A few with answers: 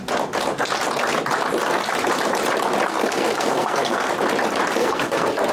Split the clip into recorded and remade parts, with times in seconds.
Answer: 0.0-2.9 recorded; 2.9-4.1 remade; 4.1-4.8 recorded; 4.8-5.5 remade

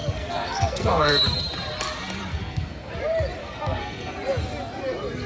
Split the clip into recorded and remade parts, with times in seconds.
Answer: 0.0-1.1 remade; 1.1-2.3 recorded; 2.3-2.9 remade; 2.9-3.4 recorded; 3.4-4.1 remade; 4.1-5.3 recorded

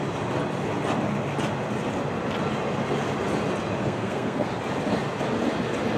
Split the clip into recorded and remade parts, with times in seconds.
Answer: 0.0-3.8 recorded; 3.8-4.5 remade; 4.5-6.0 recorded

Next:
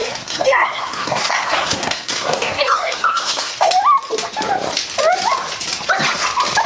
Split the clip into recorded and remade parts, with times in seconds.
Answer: 0.0-3.7 remade; 3.7-6.7 recorded

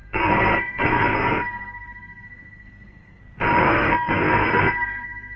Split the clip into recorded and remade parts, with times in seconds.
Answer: 0.0-3.2 remade; 3.2-3.6 recorded; 3.6-5.4 remade